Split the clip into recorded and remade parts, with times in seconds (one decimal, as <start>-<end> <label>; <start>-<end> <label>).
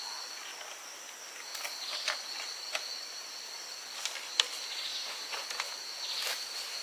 0.0-6.8 recorded